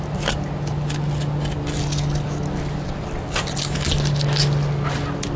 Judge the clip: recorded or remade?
recorded